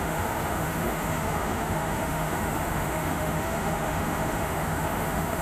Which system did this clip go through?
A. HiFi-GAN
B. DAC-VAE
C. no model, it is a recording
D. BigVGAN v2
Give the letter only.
B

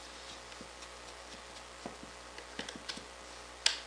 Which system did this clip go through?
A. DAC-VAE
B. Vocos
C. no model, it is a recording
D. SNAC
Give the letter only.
C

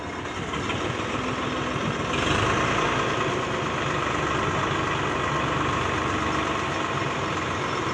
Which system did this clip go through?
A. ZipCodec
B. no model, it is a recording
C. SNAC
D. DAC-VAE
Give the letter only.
B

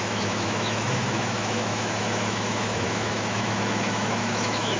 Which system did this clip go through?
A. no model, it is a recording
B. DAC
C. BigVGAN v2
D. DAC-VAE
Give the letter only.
D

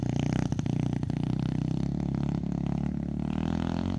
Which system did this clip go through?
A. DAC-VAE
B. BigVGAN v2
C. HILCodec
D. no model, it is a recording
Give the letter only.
D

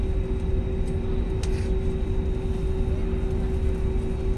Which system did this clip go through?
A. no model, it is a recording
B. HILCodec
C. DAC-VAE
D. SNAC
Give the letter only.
A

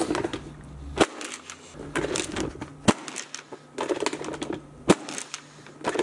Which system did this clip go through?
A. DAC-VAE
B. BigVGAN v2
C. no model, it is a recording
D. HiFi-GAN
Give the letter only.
C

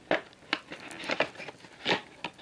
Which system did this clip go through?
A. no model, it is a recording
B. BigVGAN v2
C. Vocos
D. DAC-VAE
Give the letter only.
A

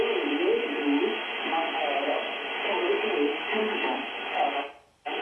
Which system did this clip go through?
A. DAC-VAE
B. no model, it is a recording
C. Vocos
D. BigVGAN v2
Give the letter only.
B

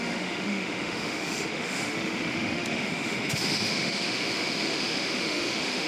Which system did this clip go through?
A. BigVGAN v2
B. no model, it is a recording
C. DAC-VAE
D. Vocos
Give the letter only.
C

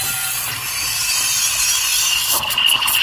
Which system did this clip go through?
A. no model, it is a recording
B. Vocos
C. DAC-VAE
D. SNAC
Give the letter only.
A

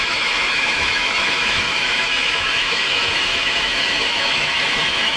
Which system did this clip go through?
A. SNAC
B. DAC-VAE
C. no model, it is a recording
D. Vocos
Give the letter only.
B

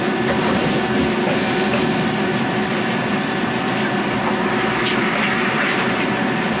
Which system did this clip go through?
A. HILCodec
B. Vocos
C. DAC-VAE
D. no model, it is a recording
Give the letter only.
D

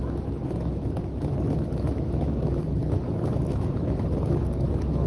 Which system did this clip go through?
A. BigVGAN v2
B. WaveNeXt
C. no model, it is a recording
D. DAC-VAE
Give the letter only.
D